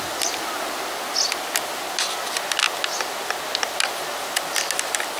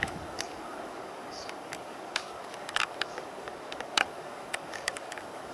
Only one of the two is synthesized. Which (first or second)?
second